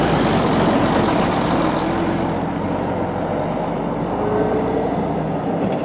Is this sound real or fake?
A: real